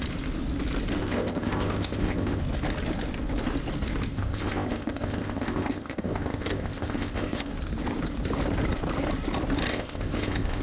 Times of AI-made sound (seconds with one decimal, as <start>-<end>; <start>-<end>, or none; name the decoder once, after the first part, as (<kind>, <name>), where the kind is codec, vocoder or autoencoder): 1.0-2.4 (codec, ZipCodec); 4.1-7.5; 9.7-10.6